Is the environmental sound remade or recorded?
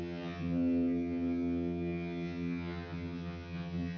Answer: remade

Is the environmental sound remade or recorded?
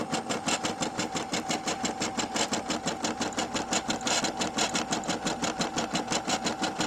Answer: recorded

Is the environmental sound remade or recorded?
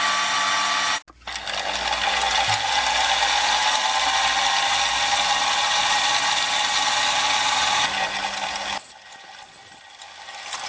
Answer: recorded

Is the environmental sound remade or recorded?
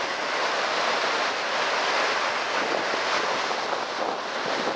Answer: recorded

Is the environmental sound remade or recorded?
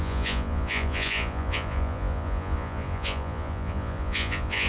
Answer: remade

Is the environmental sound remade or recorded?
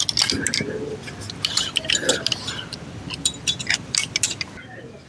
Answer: recorded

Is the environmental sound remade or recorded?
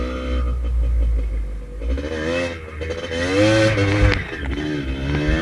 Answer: recorded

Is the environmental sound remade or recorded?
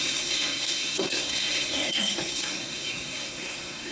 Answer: remade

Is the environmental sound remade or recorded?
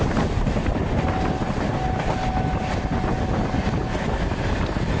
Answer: recorded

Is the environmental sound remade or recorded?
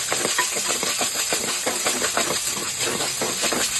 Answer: recorded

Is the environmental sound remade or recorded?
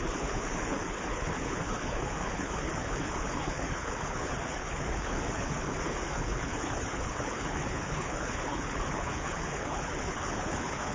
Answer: remade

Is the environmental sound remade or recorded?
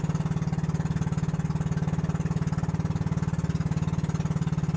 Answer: recorded